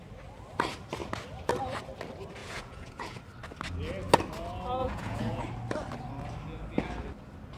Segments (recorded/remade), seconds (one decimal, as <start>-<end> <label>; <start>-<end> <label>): 0.0-2.4 recorded; 2.4-3.2 remade; 3.2-4.8 recorded; 4.8-5.4 remade; 5.4-7.6 recorded